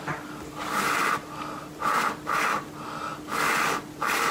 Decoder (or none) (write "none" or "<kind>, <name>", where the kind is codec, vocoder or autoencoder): none